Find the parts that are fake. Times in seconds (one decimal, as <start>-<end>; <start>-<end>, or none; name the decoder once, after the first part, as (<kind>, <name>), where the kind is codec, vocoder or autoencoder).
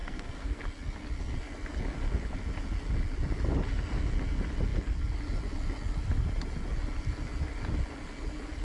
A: 0.0-0.6 (codec, SNAC)